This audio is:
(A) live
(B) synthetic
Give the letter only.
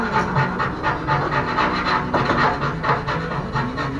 A